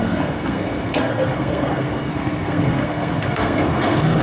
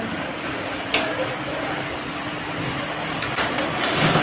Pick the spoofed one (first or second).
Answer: first